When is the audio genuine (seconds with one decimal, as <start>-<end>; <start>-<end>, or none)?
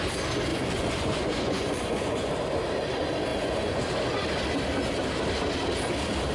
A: 0.0-0.5; 2.3-3.3; 3.8-6.3